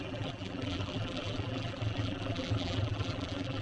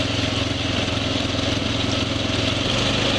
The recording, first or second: second